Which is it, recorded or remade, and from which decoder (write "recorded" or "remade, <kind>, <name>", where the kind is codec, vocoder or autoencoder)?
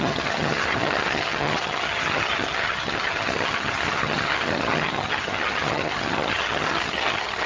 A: remade, vocoder, HiFi-GAN